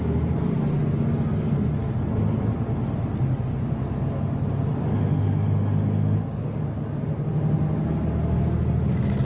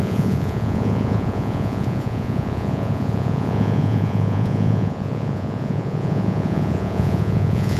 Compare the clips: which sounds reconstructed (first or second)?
second